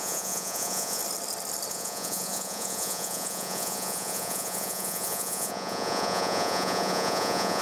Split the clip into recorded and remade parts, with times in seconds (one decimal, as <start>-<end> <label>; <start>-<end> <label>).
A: 0.0-1.0 remade; 1.0-1.7 recorded; 1.7-7.6 remade